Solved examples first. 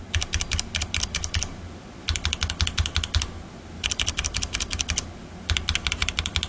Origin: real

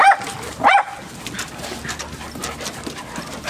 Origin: real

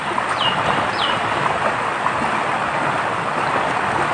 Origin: real